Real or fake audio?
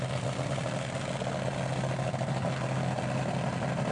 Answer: real